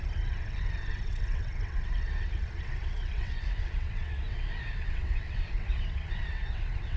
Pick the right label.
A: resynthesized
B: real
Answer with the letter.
A